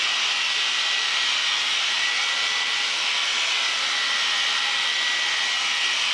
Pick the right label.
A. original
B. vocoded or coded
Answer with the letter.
A